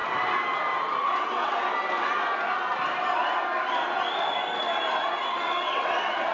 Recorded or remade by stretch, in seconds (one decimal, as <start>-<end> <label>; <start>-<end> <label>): 0.0-1.0 recorded; 1.0-1.5 remade; 1.5-5.3 recorded; 5.3-6.3 remade